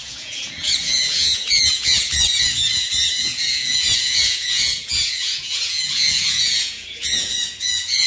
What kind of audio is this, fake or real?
fake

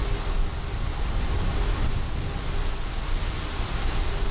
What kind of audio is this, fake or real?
real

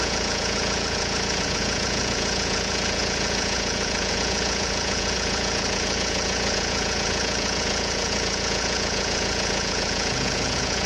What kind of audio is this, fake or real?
fake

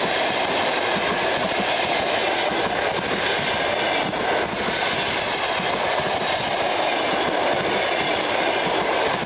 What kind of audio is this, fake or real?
real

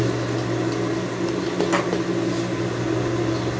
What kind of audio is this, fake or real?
real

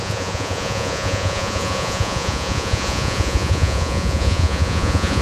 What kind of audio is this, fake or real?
fake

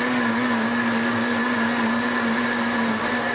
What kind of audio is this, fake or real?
real